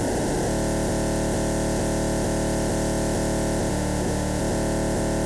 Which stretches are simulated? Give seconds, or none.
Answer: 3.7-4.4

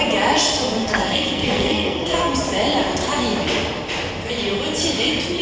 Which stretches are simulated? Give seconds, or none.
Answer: 0.8-2.3

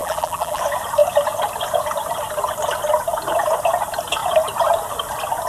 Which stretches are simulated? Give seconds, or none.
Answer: 0.0-0.6

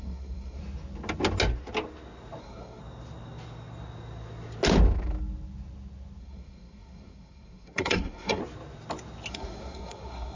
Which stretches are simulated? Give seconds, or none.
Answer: 0.0-0.6; 2.4-2.8; 6.2-8.4; 9.3-10.3

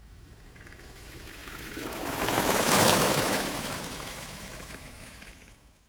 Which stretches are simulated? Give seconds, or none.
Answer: 0.0-5.9

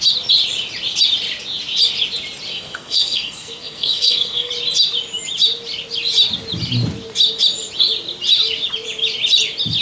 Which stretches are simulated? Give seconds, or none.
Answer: 2.5-4.5